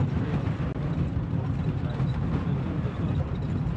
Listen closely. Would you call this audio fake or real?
real